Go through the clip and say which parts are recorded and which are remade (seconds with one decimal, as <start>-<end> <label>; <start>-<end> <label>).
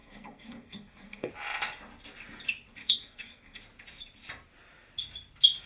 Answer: 0.0-1.3 remade; 1.3-2.8 recorded; 2.8-3.6 remade; 3.6-5.7 recorded